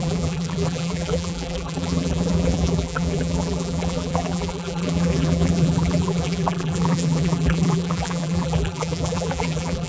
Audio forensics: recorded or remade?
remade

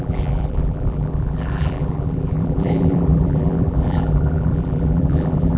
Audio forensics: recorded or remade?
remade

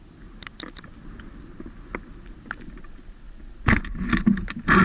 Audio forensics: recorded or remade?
recorded